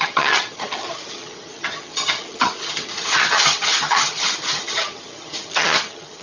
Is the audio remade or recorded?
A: remade